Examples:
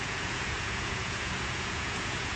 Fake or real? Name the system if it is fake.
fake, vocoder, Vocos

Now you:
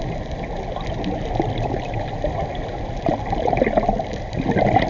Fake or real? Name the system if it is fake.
real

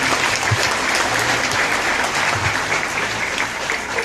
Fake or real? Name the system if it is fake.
real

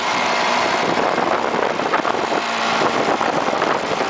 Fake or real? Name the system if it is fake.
real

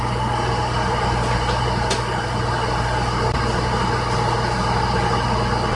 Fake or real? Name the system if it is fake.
real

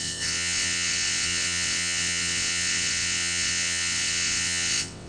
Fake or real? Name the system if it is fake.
fake, vocoder, WaveNeXt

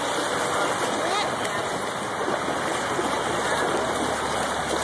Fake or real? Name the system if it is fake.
real